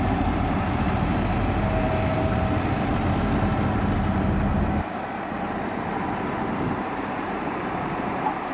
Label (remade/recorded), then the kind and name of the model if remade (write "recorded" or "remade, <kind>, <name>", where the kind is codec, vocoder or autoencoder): remade, vocoder, BigVGAN v2